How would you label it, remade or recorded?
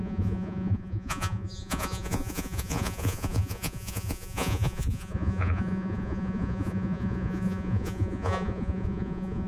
remade